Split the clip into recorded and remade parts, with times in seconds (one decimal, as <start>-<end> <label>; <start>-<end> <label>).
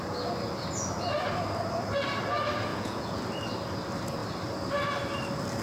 0.0-2.7 recorded; 2.7-3.2 remade; 3.2-5.6 recorded